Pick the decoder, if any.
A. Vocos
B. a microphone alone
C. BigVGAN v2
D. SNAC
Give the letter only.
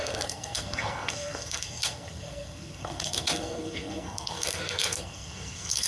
D